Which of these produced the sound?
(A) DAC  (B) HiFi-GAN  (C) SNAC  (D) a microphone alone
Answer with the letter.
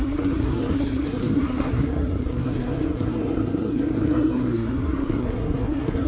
C